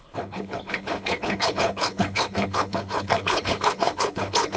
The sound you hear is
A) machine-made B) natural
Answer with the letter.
A